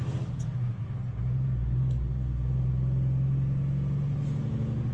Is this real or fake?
real